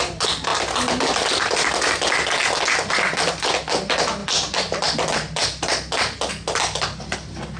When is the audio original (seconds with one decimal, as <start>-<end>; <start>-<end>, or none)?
0.0-7.6